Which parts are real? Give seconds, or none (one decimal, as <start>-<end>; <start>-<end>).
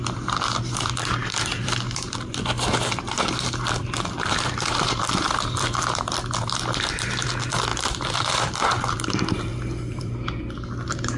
9.5-10.0